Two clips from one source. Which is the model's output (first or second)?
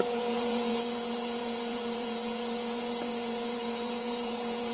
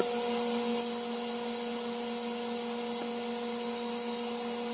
first